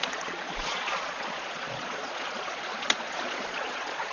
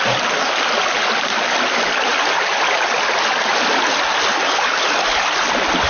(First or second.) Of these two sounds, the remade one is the first